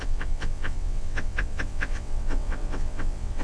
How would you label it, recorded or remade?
remade